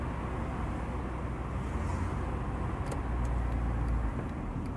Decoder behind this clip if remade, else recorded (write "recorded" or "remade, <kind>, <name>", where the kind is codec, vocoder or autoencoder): recorded